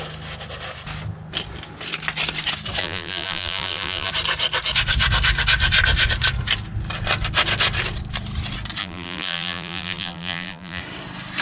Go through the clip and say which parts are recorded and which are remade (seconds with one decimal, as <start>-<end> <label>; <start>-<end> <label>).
0.0-2.8 recorded; 2.8-4.1 remade; 4.1-8.8 recorded; 8.8-10.8 remade; 10.8-11.4 recorded